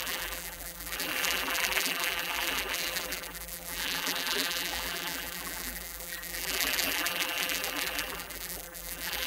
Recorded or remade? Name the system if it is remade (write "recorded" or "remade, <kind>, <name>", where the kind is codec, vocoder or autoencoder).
remade, vocoder, BigVGAN v2